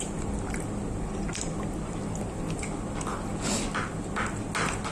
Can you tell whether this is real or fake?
real